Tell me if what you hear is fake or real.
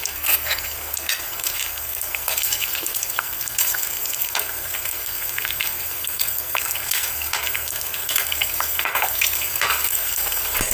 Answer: fake